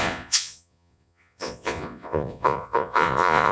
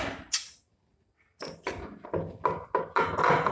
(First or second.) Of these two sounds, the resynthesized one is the first